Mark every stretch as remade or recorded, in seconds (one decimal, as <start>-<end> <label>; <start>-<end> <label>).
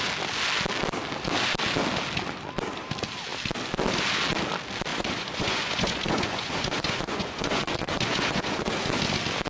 0.0-4.9 recorded; 4.9-8.7 remade; 8.7-9.5 recorded